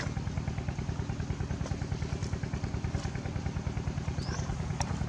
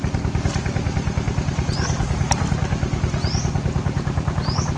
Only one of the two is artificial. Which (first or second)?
first